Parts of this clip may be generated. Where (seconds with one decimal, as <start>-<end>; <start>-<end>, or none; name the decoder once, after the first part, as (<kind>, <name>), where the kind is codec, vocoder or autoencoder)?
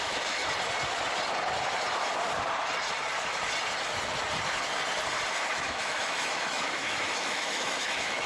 0.0-0.4 (autoencoder, DAC-VAE); 5.3-8.3